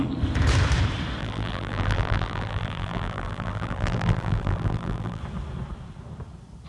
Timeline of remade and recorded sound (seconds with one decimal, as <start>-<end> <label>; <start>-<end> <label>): 0.0-1.2 recorded; 1.2-5.2 remade; 5.2-6.7 recorded